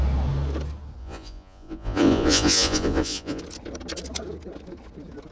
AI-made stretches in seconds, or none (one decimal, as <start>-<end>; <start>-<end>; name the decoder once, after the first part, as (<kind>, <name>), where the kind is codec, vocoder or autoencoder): 1.0-3.4 (vocoder, Vocos)